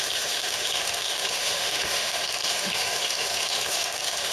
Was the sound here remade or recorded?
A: remade